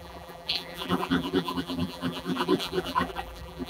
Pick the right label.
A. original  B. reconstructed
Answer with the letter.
B